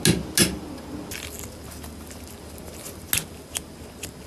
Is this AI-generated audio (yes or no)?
no